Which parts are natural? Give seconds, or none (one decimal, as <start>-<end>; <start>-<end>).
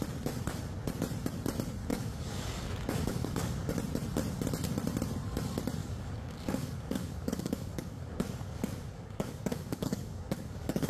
0.0-1.9; 3.7-5.8